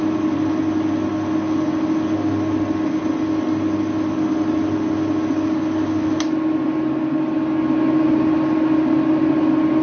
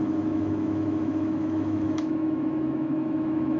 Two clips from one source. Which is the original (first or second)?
first